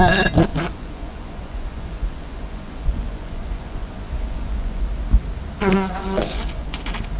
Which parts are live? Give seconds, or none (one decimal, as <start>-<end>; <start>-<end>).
0.0-0.5; 4.8-5.6; 6.8-7.2